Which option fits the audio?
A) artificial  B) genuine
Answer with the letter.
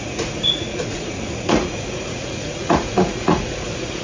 A